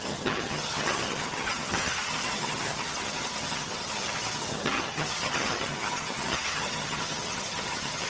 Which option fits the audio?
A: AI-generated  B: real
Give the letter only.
A